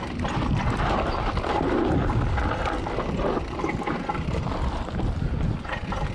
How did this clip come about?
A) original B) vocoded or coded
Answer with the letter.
A